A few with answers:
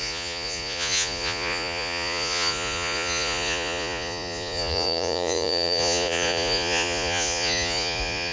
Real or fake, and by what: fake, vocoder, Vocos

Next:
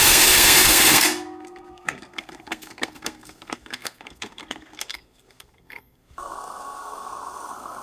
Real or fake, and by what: fake, codec, SNAC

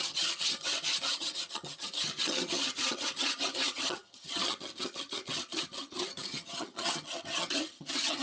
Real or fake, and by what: fake, vocoder, HiFi-GAN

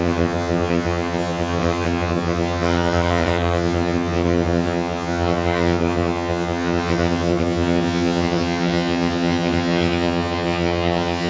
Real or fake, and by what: fake, vocoder, HiFi-GAN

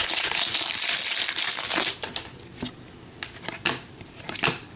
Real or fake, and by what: real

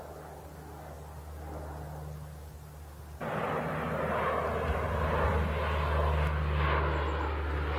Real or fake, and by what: real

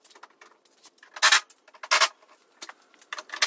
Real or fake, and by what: real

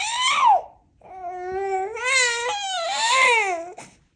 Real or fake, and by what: real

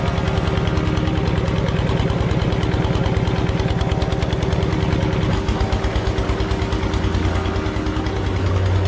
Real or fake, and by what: real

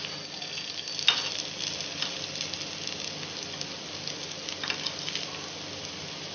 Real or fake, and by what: real